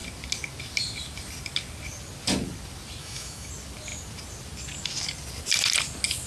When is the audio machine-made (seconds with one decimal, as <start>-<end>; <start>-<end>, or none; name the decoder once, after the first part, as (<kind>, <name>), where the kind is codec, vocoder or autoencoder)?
3.0-3.5 (autoencoder, DAC-VAE)